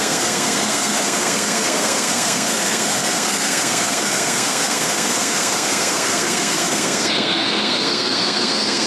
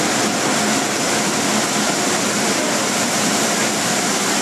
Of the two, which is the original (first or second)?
second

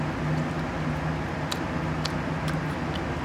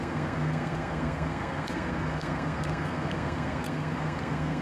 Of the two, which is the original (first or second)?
first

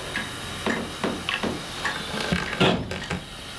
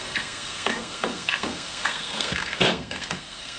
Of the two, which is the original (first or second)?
first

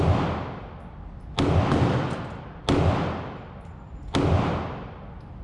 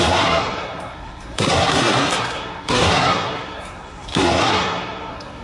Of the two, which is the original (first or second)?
first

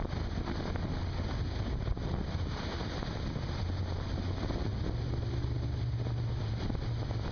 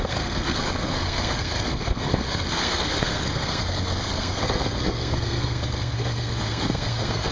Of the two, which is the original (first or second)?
first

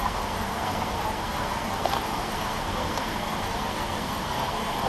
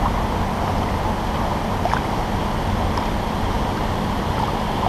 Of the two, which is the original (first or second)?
second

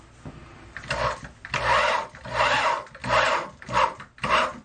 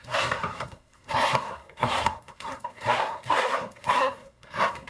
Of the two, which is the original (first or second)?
first